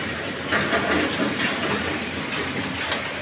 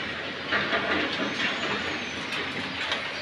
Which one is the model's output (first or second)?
first